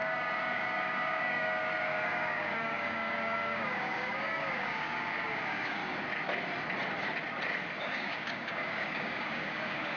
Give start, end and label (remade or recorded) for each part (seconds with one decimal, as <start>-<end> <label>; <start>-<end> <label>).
0.0-5.8 remade; 5.8-7.8 recorded; 7.8-10.0 remade

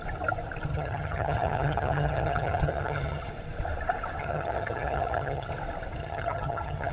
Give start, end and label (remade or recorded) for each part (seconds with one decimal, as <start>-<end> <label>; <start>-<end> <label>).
0.0-0.7 recorded; 0.7-3.3 remade; 3.3-4.2 recorded; 4.2-5.5 remade; 5.5-6.0 recorded; 6.0-6.9 remade

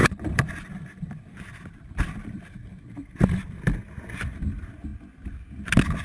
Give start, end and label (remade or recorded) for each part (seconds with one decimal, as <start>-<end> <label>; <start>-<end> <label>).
0.0-3.6 remade; 3.6-6.0 recorded

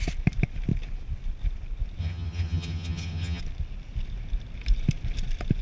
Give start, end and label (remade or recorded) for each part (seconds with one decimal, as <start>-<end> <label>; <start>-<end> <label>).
0.0-2.0 recorded; 2.0-3.4 remade; 3.4-5.6 recorded

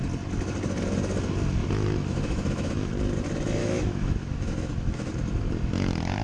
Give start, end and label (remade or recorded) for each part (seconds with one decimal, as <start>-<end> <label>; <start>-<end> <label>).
0.0-1.6 recorded; 1.6-2.9 remade; 2.9-3.6 recorded; 3.6-5.1 remade; 5.1-6.2 recorded